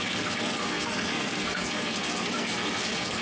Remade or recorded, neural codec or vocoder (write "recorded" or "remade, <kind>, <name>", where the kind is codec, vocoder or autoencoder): remade, codec, SNAC